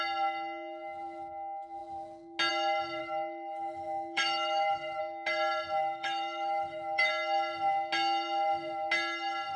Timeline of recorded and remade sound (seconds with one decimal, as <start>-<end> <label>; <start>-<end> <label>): 0.0-3.0 recorded; 3.0-5.0 remade; 5.0-5.8 recorded; 5.8-7.1 remade; 7.1-9.6 recorded